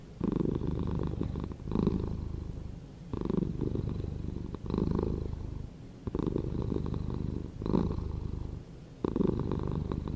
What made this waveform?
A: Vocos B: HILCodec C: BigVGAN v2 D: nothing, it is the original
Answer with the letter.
D